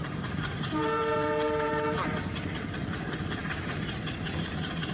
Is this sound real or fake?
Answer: fake